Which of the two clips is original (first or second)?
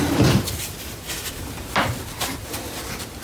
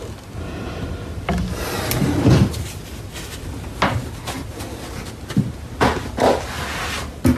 second